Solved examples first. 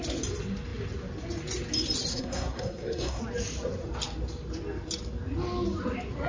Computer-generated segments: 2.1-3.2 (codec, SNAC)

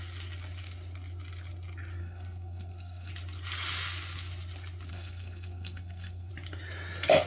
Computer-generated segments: 2.0-3.1 (codec, SNAC); 4.9-6.3

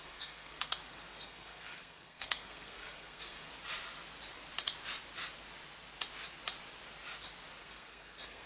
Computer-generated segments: 0.0-3.5 (codec, SNAC); 7.6-8.5

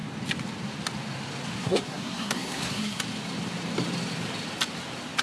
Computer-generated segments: 1.6-3.0 (codec, SNAC)

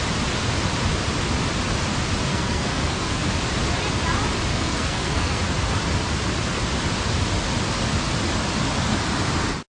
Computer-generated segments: 2.3-3.3 (codec, SNAC); 4.5-5.4